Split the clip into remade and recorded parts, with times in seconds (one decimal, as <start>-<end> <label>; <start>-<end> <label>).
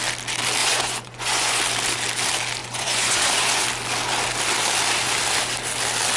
0.0-0.6 recorded; 0.6-1.6 remade; 1.6-2.6 recorded; 2.6-3.6 remade; 3.6-6.2 recorded